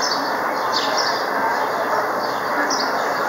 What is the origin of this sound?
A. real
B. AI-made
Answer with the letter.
A